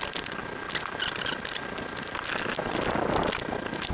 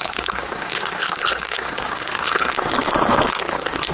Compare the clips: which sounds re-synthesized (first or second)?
second